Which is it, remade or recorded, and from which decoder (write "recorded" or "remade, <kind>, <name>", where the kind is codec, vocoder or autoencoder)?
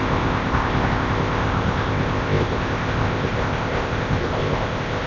remade, codec, ZipCodec